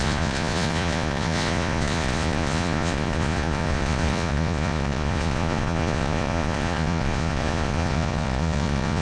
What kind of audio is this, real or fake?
fake